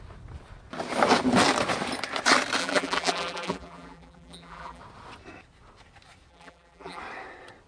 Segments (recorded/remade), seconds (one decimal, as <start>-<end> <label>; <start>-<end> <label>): 0.0-2.6 recorded; 2.6-4.8 remade; 4.8-6.3 recorded; 6.3-7.0 remade; 7.0-7.7 recorded